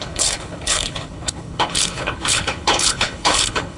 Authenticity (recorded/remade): remade